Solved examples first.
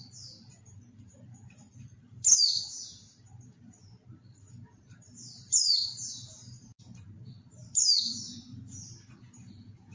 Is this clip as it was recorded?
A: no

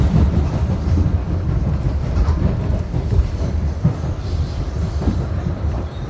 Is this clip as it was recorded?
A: no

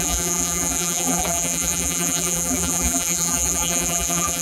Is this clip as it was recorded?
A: no